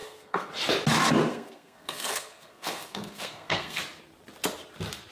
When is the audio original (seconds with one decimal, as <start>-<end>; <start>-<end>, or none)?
0.5-1.3; 3.8-5.1

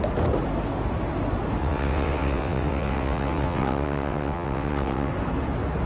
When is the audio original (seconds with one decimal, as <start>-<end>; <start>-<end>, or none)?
0.0-1.6; 5.1-5.9

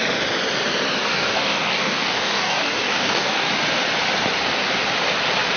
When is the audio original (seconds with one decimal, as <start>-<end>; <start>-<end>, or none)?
0.0-1.0; 3.5-5.6

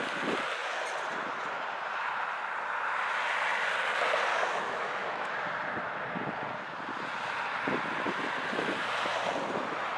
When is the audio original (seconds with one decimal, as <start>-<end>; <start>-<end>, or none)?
0.0-4.3; 5.4-10.0

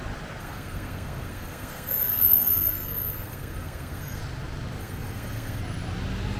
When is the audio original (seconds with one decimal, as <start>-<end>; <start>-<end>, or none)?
0.0-0.4; 4.2-4.8; 5.6-6.4